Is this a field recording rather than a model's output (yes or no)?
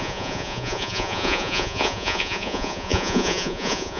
no